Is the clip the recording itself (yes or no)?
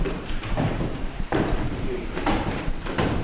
no